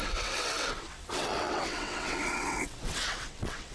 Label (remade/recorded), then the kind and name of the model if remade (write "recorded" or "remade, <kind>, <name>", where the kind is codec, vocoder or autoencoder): remade, vocoder, WaveNeXt